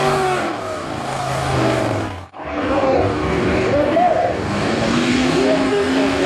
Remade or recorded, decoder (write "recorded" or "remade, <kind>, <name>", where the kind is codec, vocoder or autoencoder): remade, codec, DAC